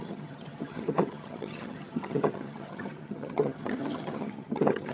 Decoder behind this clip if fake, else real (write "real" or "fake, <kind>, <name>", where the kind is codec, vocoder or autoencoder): fake, vocoder, HiFi-GAN